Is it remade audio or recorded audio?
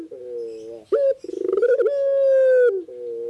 recorded